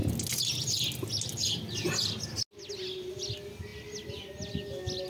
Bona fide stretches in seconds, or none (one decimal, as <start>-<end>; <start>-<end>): 0.0-5.1